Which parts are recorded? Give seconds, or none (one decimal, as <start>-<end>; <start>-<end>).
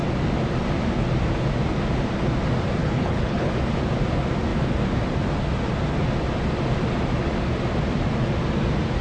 0.0-2.8; 3.5-9.0